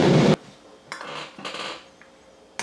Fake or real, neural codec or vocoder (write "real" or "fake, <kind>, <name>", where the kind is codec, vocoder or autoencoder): real